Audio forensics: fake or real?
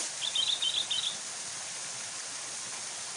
real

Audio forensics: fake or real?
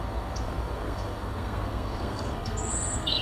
fake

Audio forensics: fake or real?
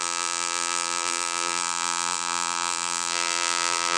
fake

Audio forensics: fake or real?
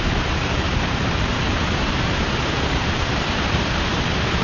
fake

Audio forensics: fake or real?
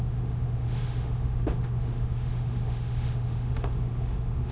fake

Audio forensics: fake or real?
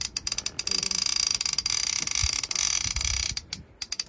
real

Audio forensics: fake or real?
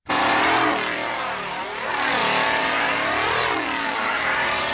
real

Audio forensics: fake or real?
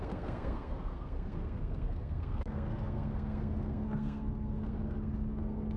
fake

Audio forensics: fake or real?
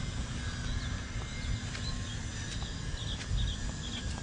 real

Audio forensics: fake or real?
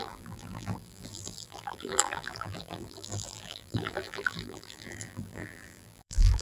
fake